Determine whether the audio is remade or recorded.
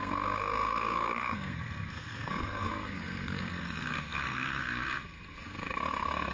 remade